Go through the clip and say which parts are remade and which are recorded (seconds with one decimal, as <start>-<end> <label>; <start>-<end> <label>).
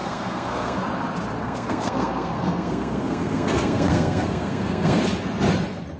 0.0-0.8 remade; 0.8-1.4 recorded; 1.4-5.0 remade; 5.0-6.0 recorded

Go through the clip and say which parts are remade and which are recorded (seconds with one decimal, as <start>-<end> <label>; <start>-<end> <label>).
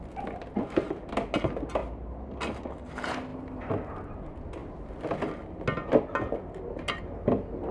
0.0-7.7 recorded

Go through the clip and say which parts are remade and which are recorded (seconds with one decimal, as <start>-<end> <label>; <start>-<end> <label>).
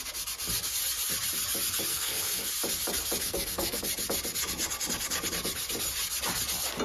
0.0-1.9 recorded; 1.9-2.5 remade; 2.5-3.2 recorded; 3.2-3.8 remade; 3.8-6.8 recorded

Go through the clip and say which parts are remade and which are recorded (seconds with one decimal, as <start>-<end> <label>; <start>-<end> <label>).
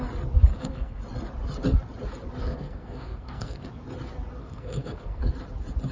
0.0-0.5 recorded; 0.5-1.0 remade; 1.0-2.4 recorded; 2.4-3.7 remade; 3.7-4.4 recorded; 4.4-5.3 remade; 5.3-5.9 recorded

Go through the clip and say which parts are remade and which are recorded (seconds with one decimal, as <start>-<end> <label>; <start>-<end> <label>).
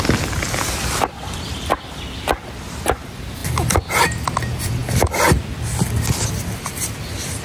0.0-7.4 recorded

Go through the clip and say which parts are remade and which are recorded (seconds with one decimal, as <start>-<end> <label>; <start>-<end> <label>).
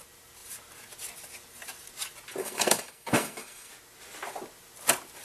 0.0-2.4 recorded; 2.4-3.7 remade; 3.7-5.2 recorded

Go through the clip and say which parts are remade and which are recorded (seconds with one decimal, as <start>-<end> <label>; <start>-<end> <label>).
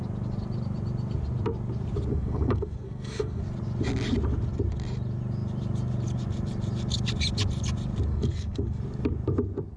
0.0-2.1 recorded; 2.1-3.4 remade; 3.4-8.1 recorded; 8.1-8.8 remade; 8.8-9.8 recorded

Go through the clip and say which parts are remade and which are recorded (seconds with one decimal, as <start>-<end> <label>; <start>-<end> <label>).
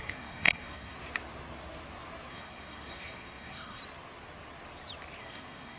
0.0-1.0 remade; 1.0-2.3 recorded; 2.3-3.8 remade; 3.8-5.2 recorded; 5.2-5.8 remade